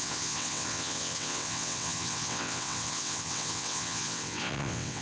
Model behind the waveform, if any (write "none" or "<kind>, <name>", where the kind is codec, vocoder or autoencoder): vocoder, WaveNeXt